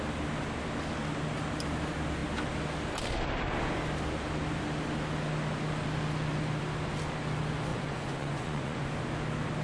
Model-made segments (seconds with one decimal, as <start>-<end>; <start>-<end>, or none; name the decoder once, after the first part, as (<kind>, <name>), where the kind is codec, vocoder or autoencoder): 7.7-8.9 (vocoder, Vocos)